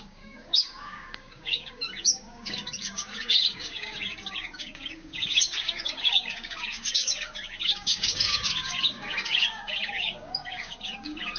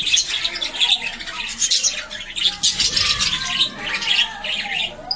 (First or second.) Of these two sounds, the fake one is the first